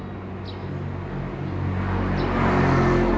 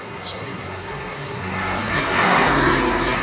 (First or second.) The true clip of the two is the first